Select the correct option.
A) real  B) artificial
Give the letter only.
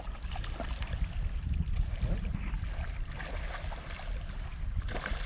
A